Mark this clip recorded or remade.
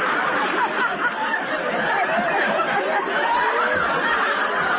remade